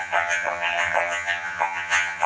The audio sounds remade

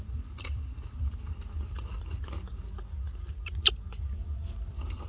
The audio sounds recorded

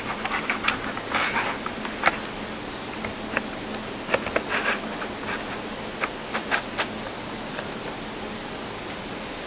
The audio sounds recorded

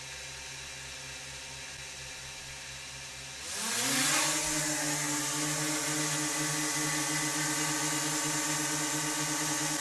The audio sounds recorded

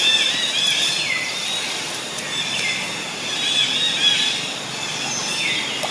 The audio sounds recorded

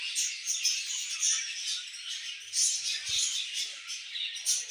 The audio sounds recorded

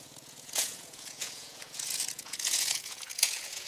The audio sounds remade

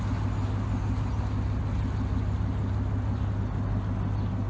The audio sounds recorded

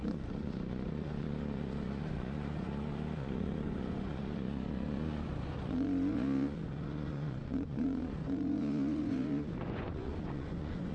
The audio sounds remade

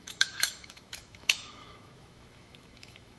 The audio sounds remade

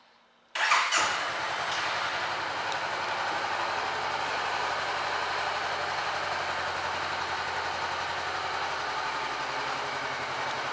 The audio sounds recorded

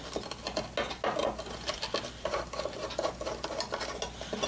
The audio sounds recorded